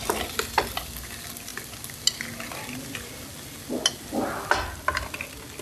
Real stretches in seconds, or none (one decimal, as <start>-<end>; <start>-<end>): 0.0-5.6